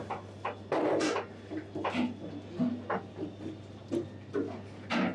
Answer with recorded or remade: recorded